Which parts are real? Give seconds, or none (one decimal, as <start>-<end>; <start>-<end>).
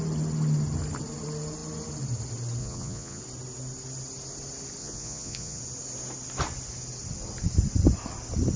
0.0-2.6; 3.2-4.8; 5.6-8.6